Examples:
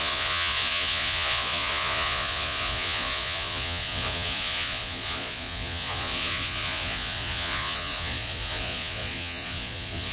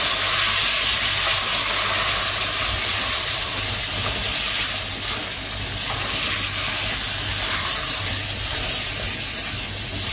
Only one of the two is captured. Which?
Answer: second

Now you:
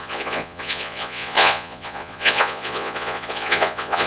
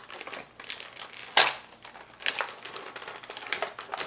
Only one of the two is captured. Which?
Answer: second